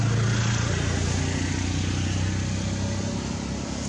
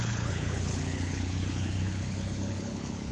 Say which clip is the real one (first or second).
first